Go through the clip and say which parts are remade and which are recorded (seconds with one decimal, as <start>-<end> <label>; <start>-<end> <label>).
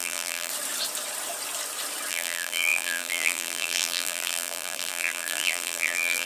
0.0-0.5 remade; 0.5-2.1 recorded; 2.1-6.3 remade